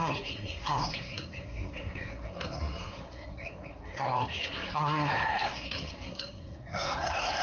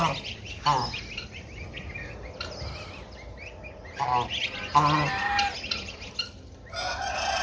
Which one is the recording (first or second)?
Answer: second